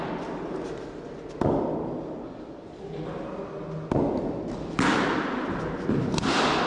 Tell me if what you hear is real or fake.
real